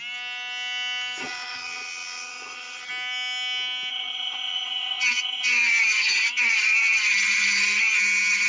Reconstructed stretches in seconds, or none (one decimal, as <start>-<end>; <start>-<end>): 1.2-2.9; 3.9-8.5